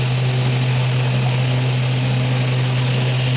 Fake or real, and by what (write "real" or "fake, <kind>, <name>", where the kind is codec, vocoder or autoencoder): real